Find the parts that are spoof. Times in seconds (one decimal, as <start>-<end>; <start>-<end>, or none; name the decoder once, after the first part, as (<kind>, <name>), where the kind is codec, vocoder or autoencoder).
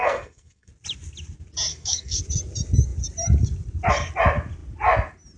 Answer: 0.0-0.7 (codec, SNAC); 1.7-2.2